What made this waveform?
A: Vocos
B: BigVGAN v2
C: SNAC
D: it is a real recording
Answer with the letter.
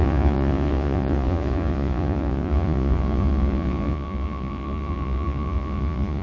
A